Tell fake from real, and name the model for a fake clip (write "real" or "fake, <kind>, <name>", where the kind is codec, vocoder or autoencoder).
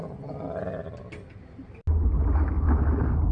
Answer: real